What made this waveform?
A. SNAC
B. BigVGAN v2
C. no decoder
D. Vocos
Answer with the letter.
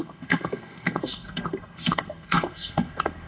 A